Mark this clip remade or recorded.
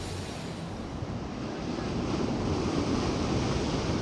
recorded